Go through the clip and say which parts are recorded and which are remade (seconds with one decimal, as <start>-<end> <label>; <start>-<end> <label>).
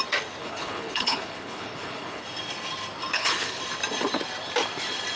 0.0-0.4 recorded; 0.4-2.2 remade; 2.2-3.1 recorded; 3.1-3.6 remade; 3.6-5.2 recorded